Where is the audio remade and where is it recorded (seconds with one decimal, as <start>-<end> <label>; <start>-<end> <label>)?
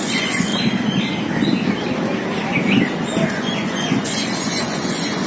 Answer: 0.0-0.5 remade; 0.5-3.3 recorded; 3.3-5.3 remade